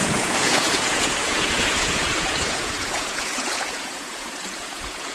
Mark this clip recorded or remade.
remade